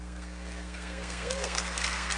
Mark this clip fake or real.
fake